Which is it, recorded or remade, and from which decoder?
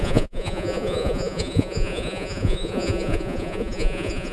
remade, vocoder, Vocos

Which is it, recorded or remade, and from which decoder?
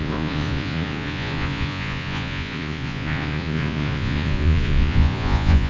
remade, vocoder, Vocos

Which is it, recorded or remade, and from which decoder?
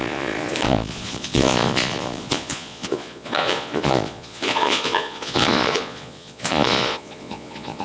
remade, vocoder, Vocos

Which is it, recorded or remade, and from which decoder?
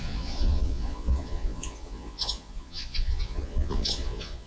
remade, vocoder, Vocos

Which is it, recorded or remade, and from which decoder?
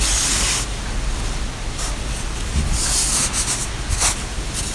recorded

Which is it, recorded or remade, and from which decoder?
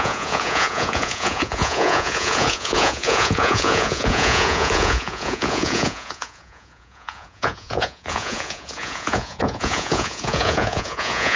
remade, vocoder, Vocos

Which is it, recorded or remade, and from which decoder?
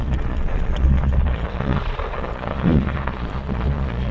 remade, vocoder, Vocos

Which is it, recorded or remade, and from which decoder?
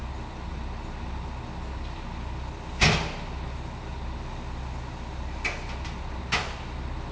recorded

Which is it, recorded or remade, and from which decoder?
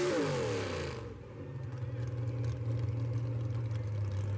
recorded